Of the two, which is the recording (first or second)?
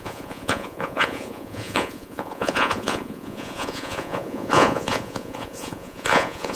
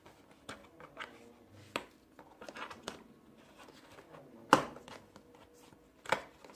second